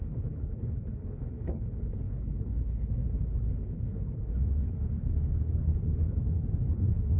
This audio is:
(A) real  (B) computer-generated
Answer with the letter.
B